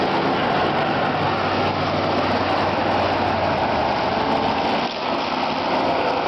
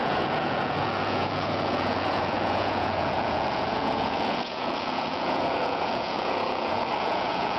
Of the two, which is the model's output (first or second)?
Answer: second